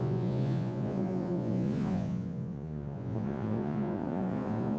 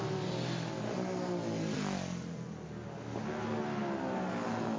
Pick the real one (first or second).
second